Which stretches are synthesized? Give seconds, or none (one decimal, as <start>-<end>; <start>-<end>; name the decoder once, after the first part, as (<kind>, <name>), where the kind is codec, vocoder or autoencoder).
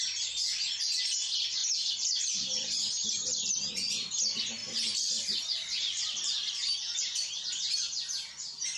1.6-3.7 (vocoder, BigVGAN v2)